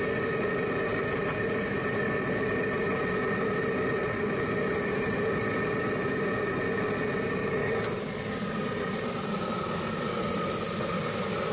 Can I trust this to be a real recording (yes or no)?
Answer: yes